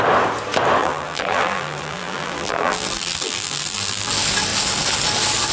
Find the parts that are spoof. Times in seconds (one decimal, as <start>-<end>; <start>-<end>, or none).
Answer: 0.8-4.1